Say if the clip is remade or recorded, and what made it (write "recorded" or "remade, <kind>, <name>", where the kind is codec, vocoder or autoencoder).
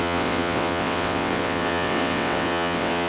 remade, vocoder, WaveNeXt